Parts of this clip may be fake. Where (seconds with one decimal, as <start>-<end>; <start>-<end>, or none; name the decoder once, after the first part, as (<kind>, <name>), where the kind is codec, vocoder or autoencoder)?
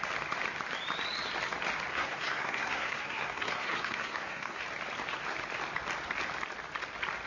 1.9-4.6 (codec, SNAC)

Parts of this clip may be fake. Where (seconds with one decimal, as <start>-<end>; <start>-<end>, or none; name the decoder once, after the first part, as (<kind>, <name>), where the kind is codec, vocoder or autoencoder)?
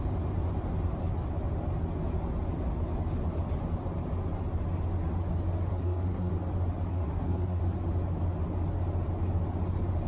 5.7-6.3 (codec, SNAC); 6.9-7.6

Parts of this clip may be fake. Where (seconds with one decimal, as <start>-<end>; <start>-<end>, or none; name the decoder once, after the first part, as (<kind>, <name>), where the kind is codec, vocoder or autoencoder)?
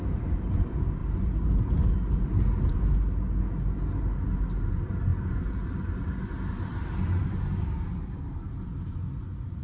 none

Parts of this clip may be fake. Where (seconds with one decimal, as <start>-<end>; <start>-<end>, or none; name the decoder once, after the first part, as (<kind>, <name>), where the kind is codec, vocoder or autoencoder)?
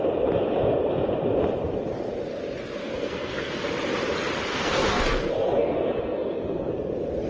2.8-3.6 (codec, SNAC); 4.5-6.7